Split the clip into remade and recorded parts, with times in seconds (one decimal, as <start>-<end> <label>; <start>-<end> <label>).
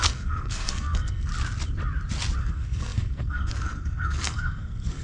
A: 0.0-1.3 remade; 1.3-2.4 recorded; 2.4-5.0 remade